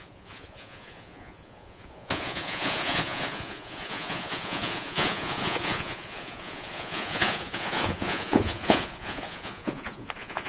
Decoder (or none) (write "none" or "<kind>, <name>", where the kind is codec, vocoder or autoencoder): vocoder, Vocos